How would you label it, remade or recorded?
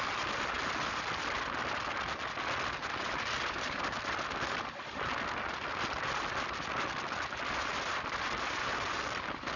recorded